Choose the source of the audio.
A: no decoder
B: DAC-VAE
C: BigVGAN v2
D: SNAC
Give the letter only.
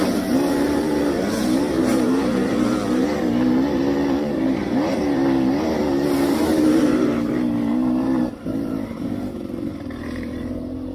C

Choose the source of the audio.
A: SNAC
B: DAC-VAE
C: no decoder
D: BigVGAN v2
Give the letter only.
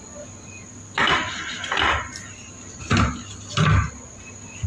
C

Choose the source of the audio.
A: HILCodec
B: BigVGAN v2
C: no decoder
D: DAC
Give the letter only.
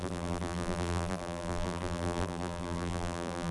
B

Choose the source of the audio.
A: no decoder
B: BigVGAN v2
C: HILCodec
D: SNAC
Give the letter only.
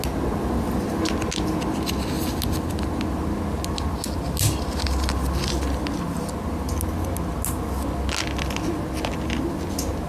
A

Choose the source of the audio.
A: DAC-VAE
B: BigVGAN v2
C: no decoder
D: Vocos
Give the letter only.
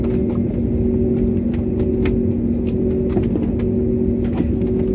C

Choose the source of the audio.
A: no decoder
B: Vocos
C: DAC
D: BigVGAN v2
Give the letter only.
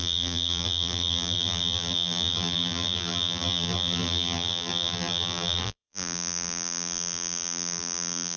D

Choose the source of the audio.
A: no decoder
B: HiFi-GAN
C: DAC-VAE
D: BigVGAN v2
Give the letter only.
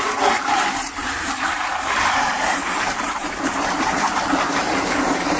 D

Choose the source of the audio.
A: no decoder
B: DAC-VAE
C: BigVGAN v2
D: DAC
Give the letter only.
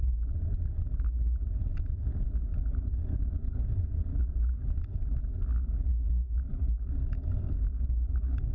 A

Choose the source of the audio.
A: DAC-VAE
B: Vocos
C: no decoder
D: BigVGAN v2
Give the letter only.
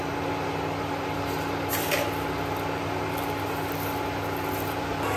C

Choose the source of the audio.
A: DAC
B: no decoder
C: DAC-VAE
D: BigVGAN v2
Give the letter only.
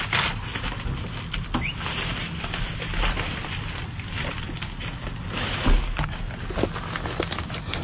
B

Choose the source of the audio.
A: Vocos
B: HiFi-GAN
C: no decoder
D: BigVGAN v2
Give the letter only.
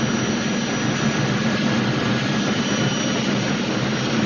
C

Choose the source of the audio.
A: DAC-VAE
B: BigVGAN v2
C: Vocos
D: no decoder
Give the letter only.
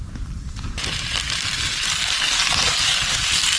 D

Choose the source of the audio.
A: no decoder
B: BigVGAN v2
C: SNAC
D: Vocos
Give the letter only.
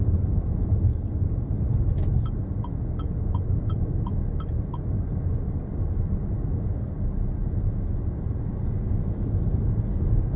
A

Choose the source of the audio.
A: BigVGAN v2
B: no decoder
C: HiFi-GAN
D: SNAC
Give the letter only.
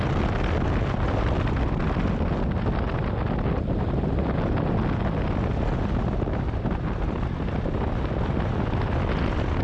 B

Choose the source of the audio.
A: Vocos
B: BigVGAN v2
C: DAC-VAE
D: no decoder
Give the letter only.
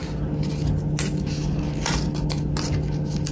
D